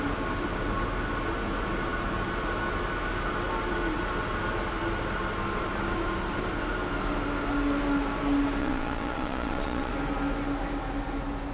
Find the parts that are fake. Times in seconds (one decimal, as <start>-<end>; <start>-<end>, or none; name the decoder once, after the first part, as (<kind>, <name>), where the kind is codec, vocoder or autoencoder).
8.6-9.9 (vocoder, Vocos)